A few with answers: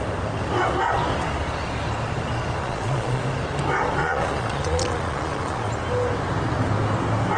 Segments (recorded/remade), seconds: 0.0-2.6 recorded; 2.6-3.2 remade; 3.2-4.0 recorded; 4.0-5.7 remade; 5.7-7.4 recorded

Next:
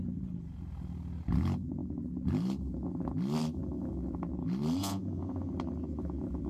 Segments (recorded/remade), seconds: 0.0-4.8 recorded; 4.8-5.5 remade; 5.5-6.5 recorded

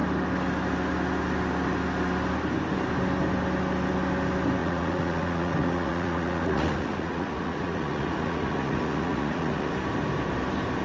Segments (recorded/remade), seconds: 0.0-4.6 recorded; 4.6-9.7 remade; 9.7-10.8 recorded

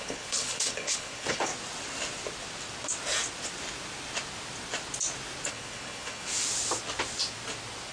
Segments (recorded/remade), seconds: 0.0-1.5 remade; 1.5-5.5 recorded; 5.5-6.3 remade; 6.3-7.9 recorded

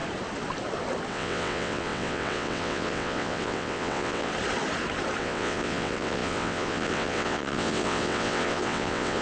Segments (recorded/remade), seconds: 0.0-1.1 recorded; 1.1-4.3 remade; 4.3-5.2 recorded; 5.2-9.2 remade